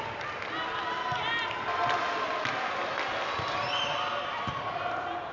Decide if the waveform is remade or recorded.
recorded